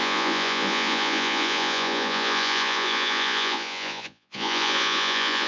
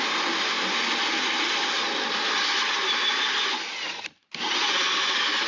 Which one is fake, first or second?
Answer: first